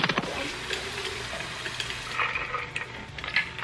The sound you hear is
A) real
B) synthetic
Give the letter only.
A